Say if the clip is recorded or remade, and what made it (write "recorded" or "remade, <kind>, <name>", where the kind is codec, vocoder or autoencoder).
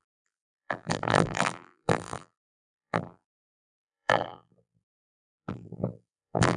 remade, vocoder, BigVGAN v2